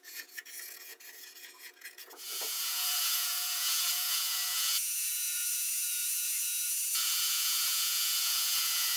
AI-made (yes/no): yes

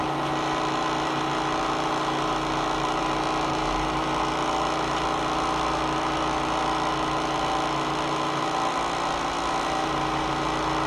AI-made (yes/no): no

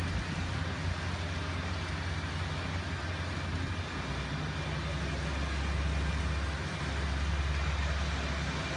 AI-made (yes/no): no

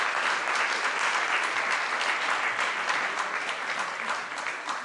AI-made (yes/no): no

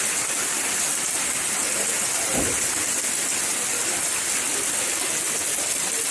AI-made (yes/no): no